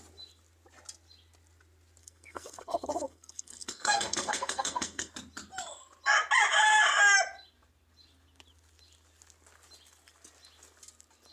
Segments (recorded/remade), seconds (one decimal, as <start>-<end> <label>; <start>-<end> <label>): 0.0-2.0 recorded; 2.0-5.1 remade; 5.1-11.3 recorded

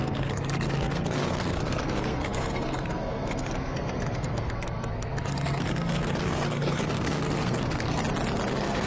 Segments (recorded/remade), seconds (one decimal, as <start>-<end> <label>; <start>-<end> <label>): 0.0-8.0 remade; 8.0-8.5 recorded; 8.5-8.9 remade

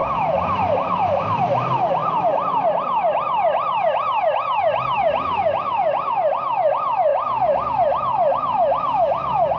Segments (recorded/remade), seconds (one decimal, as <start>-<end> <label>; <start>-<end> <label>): 0.0-1.2 remade; 1.2-9.6 recorded

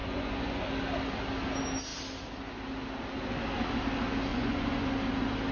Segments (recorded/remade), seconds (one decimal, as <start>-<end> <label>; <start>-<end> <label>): 0.0-0.6 remade; 0.6-4.3 recorded; 4.3-4.9 remade; 4.9-5.5 recorded